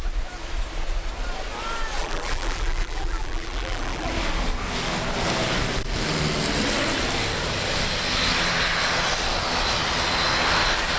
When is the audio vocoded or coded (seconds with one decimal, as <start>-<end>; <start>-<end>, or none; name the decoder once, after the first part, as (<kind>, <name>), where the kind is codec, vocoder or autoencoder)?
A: 2.0-4.1 (vocoder, BigVGAN v2)